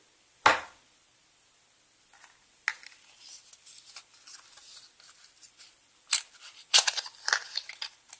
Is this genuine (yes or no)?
yes